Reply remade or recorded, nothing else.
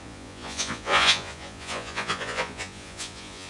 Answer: remade